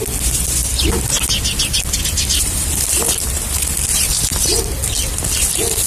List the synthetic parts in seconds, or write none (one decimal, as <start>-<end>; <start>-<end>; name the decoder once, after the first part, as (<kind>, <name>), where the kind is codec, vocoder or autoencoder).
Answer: 2.3-3.3 (vocoder, BigVGAN v2); 4.3-5.2